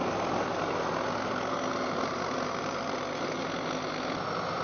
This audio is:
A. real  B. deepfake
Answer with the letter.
A